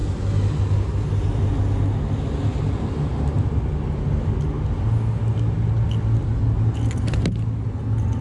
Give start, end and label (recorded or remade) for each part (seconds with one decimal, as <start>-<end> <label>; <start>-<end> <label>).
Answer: 0.0-8.2 recorded